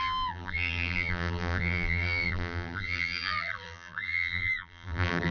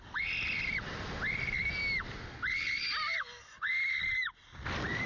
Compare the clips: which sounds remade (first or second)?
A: first